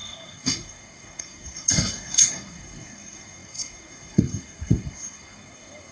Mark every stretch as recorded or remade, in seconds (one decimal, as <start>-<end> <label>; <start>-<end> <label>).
0.0-5.9 remade